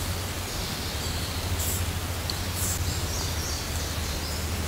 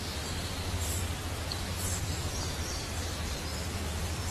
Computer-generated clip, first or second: second